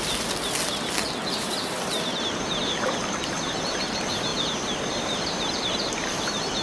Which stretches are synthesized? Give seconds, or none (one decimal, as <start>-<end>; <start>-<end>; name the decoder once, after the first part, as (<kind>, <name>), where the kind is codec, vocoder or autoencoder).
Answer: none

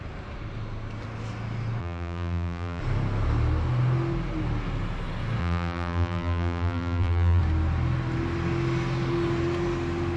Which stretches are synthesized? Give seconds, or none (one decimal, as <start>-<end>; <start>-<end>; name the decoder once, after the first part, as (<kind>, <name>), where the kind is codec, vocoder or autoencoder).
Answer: 1.8-2.8 (vocoder, BigVGAN v2); 5.4-7.4

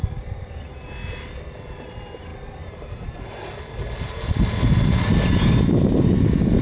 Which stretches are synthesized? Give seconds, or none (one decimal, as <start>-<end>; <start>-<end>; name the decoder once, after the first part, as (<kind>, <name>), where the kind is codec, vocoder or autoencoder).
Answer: 0.0-0.9 (vocoder, BigVGAN v2)

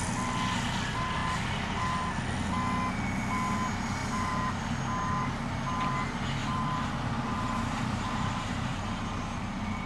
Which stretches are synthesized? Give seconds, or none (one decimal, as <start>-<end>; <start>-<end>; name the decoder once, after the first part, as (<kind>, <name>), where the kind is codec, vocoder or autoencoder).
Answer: 4.0-4.6 (vocoder, BigVGAN v2); 6.4-9.4

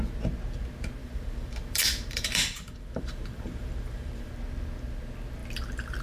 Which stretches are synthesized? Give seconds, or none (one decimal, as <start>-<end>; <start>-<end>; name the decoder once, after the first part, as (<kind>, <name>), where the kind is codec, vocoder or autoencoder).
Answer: 1.0-4.3 (vocoder, BigVGAN v2)

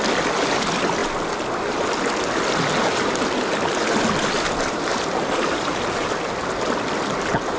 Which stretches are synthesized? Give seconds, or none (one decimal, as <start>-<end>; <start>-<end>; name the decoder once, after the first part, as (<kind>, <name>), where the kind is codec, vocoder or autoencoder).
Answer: 4.9-6.4 (vocoder, BigVGAN v2)